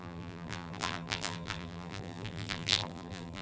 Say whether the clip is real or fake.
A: fake